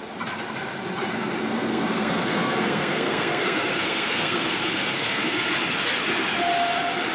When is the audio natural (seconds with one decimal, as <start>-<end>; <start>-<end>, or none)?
0.0-1.5; 5.5-7.1